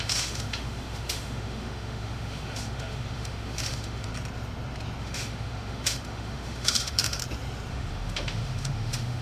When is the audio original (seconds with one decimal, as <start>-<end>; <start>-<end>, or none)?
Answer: 4.1-5.0; 7.2-7.7